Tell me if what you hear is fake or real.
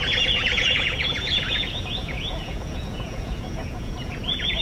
fake